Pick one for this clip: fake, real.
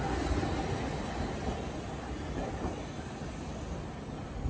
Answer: real